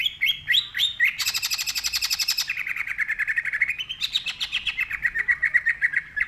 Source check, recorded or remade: recorded